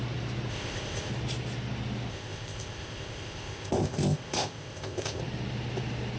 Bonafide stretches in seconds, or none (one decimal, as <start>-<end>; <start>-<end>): 0.0-0.5; 1.1-2.1; 5.2-6.2